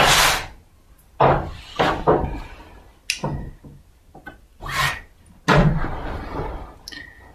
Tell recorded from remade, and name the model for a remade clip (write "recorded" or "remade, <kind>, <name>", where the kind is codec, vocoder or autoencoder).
recorded